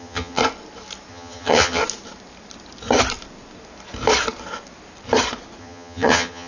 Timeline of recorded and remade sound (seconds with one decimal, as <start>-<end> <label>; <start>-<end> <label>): 0.0-0.4 remade; 0.4-1.1 recorded; 1.1-1.8 remade; 1.8-5.6 recorded; 5.6-6.5 remade